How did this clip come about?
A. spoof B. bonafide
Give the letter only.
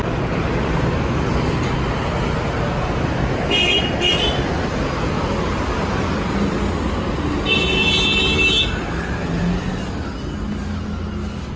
B